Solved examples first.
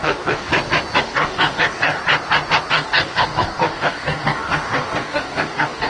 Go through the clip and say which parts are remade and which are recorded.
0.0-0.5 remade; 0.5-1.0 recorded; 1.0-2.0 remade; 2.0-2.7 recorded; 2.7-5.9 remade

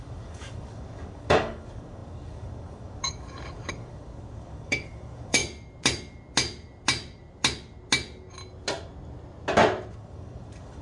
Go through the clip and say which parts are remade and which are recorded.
0.0-5.4 remade; 5.4-9.9 recorded; 9.9-10.8 remade

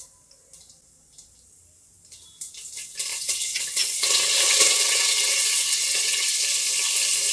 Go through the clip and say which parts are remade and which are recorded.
0.0-3.1 recorded; 3.1-6.3 remade; 6.3-7.3 recorded

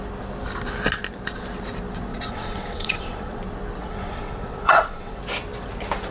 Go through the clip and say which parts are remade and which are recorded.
0.0-2.1 recorded; 2.1-3.4 remade; 3.4-3.8 recorded; 3.8-5.2 remade; 5.2-6.1 recorded

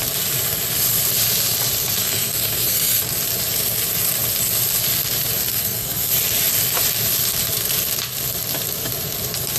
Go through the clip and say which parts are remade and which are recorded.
0.0-2.0 recorded; 2.0-3.0 remade; 3.0-5.5 recorded; 5.5-6.1 remade; 6.1-9.6 recorded

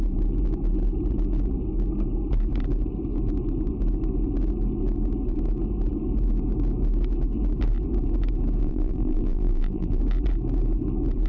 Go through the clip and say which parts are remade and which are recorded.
0.0-8.6 recorded; 8.6-10.0 remade; 10.0-11.3 recorded